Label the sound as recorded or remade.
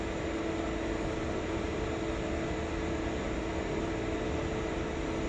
recorded